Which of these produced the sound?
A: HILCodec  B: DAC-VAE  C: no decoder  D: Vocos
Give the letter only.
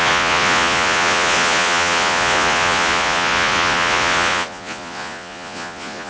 D